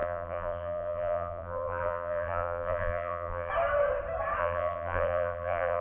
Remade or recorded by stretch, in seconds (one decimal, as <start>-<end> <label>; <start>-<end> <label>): 0.0-3.5 remade; 3.5-4.4 recorded; 4.4-5.8 remade